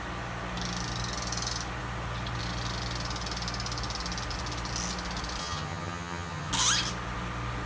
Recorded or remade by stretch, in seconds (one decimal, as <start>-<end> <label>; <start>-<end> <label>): 0.0-5.4 recorded; 5.4-6.5 remade; 6.5-7.7 recorded